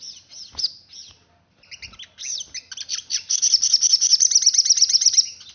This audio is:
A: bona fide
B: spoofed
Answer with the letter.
A